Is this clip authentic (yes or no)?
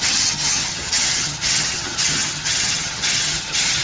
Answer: no